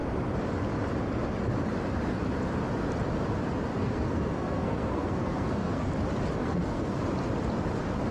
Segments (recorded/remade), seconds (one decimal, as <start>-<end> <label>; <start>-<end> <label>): 0.0-3.7 recorded; 3.7-5.9 remade; 5.9-6.4 recorded; 6.4-7.0 remade; 7.0-8.1 recorded